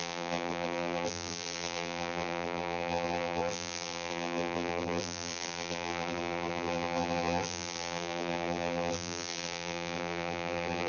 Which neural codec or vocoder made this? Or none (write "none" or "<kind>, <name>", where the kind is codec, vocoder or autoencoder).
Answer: vocoder, BigVGAN v2